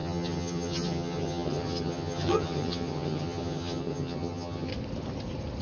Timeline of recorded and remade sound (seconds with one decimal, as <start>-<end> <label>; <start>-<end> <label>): 0.0-4.7 remade; 4.7-5.6 recorded